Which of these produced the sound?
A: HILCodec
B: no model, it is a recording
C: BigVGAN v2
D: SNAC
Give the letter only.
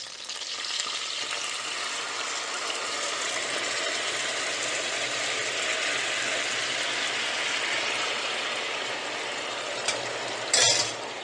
B